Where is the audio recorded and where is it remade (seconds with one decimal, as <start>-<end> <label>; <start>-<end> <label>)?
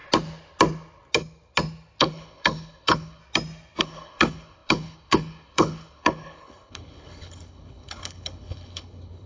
0.0-2.0 recorded; 2.0-3.2 remade; 3.2-3.8 recorded; 3.8-9.3 remade